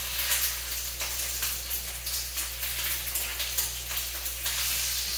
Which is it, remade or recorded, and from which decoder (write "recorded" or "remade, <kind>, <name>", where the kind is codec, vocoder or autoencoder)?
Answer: recorded